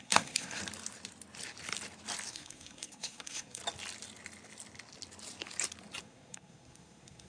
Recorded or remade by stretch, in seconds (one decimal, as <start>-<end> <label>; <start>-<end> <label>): 0.0-0.6 remade; 0.6-2.3 recorded; 2.3-3.6 remade; 3.6-6.0 recorded; 6.0-7.3 remade